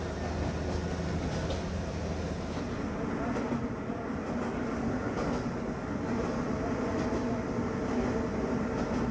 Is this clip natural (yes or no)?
yes